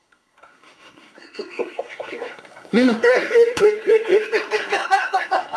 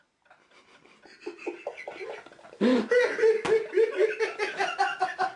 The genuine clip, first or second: second